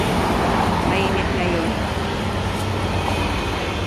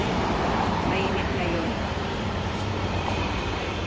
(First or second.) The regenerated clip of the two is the second